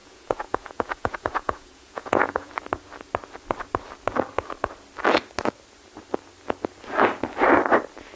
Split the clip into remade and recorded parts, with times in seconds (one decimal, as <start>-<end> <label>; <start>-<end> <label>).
0.0-2.5 remade; 2.5-8.2 recorded